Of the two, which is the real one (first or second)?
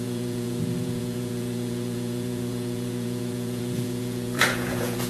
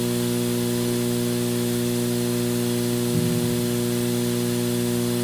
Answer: second